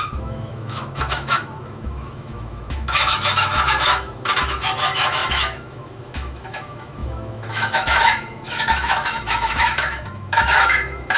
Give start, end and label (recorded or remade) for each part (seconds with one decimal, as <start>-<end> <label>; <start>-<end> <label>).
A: 0.0-11.2 remade